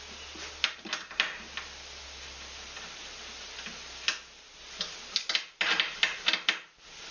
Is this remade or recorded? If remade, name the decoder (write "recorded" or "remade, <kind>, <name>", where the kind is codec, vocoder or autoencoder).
recorded